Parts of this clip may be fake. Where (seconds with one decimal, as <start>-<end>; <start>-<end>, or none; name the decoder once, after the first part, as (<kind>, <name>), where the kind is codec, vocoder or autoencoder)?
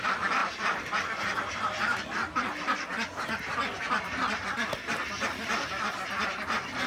0.0-2.9 (vocoder, BigVGAN v2); 3.5-6.9